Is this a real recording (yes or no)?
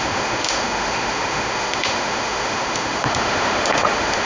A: no